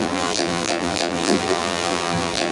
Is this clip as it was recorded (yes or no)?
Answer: no